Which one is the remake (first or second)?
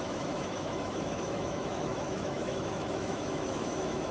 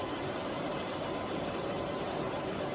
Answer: first